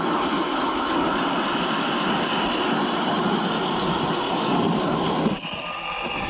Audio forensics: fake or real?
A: real